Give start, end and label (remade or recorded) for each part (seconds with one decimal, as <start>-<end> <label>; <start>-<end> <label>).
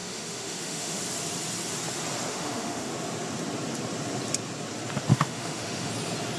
0.0-1.0 remade; 1.0-2.3 recorded; 2.3-2.9 remade; 2.9-5.1 recorded; 5.1-5.9 remade; 5.9-6.4 recorded